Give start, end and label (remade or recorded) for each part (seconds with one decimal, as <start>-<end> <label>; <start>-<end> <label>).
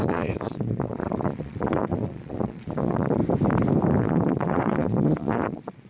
0.0-3.2 remade; 3.2-4.0 recorded; 4.0-5.9 remade